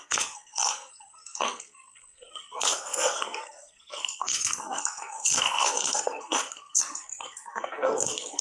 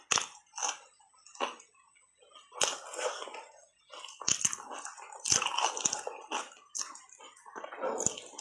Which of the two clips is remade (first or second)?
first